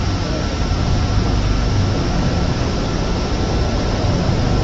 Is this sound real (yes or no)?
yes